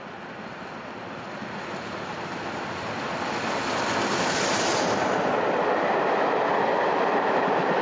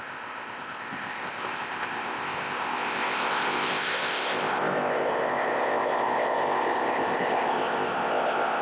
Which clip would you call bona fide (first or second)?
first